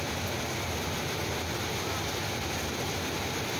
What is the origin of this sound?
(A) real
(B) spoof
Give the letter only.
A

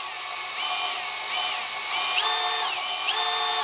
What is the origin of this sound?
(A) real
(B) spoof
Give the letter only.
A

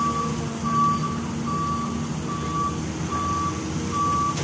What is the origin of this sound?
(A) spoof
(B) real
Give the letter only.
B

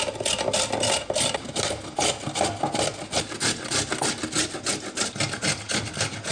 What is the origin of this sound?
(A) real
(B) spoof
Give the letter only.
A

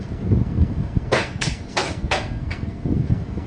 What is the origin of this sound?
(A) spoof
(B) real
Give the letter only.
A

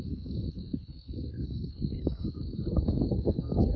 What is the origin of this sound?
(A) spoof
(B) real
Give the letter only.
A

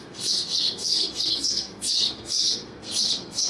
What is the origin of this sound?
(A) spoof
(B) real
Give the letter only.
A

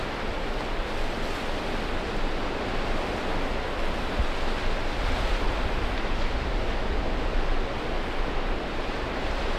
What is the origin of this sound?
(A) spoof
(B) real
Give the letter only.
B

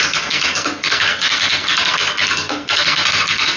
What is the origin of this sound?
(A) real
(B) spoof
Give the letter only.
B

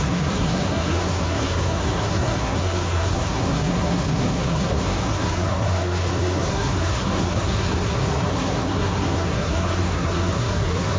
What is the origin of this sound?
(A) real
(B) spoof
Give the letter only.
B